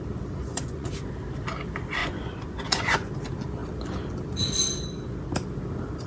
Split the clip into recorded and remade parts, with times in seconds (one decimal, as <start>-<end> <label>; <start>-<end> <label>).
0.0-0.4 recorded; 0.4-0.9 remade; 0.9-2.0 recorded; 2.0-3.1 remade; 3.1-6.1 recorded